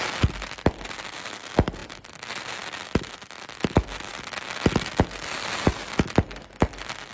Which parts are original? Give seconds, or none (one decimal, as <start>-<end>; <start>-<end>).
0.0-7.1